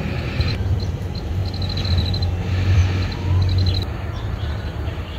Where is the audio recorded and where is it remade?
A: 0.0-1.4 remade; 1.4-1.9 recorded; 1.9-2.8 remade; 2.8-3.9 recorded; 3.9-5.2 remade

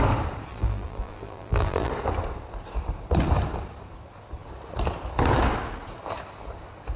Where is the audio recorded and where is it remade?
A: 0.0-0.5 recorded; 0.5-1.9 remade; 1.9-7.0 recorded

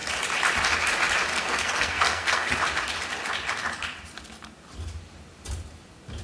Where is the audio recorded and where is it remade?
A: 0.0-1.3 recorded; 1.3-2.5 remade; 2.5-6.2 recorded

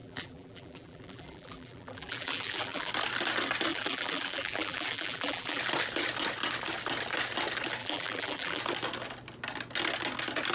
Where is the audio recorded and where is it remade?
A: 0.0-2.9 remade; 2.9-3.7 recorded; 3.7-5.6 remade; 5.6-7.8 recorded; 7.8-8.6 remade; 8.6-10.5 recorded